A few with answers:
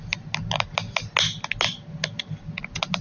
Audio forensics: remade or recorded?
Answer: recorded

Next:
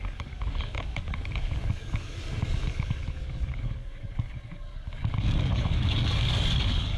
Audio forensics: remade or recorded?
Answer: remade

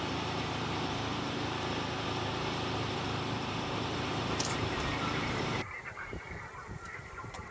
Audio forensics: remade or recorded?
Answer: remade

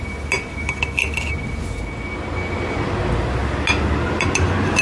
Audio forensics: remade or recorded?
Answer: recorded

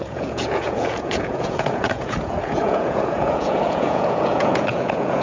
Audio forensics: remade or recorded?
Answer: remade